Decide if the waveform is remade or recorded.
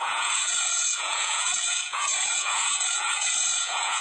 remade